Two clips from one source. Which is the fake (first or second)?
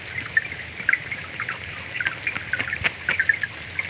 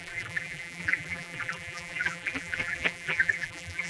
second